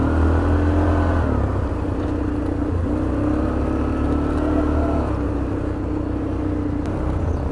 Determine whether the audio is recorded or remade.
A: recorded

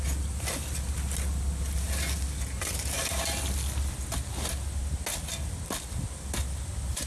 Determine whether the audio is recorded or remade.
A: recorded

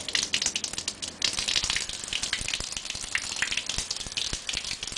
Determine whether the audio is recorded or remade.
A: recorded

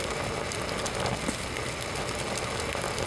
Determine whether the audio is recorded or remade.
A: recorded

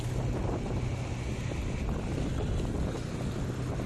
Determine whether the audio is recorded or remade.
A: recorded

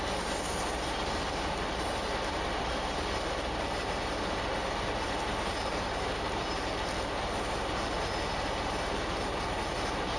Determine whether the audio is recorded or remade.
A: recorded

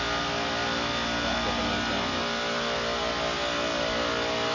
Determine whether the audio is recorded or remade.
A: recorded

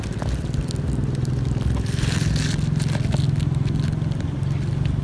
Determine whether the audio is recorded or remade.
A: recorded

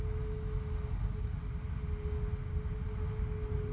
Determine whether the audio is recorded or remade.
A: recorded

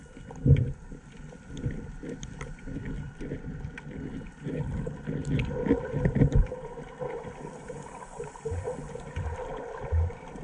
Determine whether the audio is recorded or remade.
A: recorded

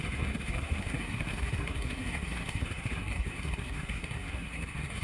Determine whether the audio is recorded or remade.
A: remade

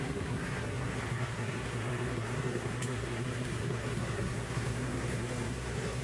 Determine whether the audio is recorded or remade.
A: remade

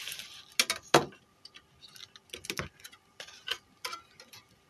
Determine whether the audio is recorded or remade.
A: recorded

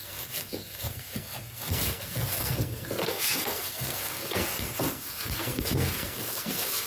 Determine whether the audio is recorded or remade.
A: remade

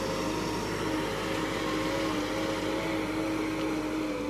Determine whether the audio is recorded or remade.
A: recorded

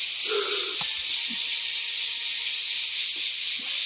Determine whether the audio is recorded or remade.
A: recorded